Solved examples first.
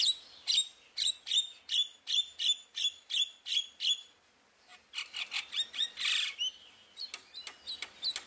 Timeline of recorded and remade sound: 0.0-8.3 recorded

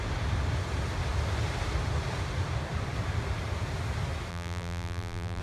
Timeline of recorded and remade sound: 0.0-4.3 recorded; 4.3-5.4 remade

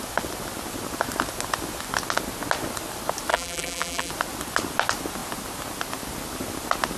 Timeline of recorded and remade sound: 0.0-3.3 recorded; 3.3-4.1 remade; 4.1-7.0 recorded

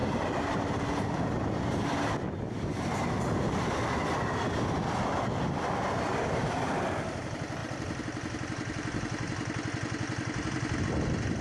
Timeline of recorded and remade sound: 0.0-0.6 remade; 0.6-11.4 recorded

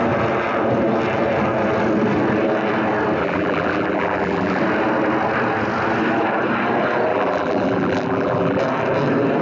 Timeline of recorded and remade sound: 0.0-3.2 recorded; 3.2-4.6 remade; 4.6-7.1 recorded; 7.1-8.6 remade; 8.6-9.4 recorded

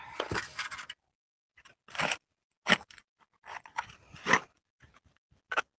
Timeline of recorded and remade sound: 0.0-5.8 recorded